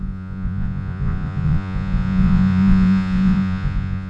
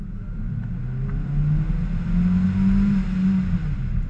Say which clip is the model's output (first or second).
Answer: first